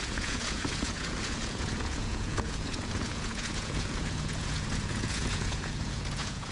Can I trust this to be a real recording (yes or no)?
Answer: no